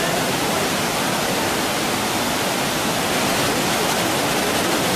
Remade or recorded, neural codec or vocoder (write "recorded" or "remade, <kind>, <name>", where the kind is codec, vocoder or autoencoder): recorded